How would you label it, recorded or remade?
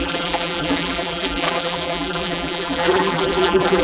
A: remade